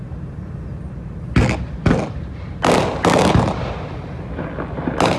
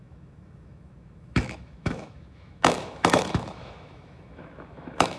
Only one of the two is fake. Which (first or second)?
second